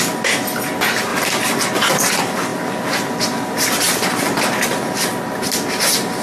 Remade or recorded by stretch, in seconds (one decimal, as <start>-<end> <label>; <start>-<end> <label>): 0.0-6.2 recorded